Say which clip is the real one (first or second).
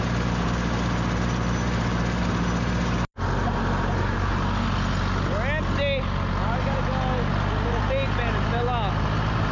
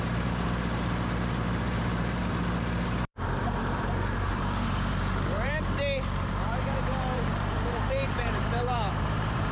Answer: first